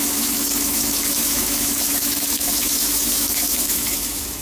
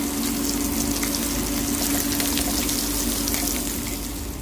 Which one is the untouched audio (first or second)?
second